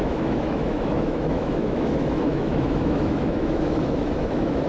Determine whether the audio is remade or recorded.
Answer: remade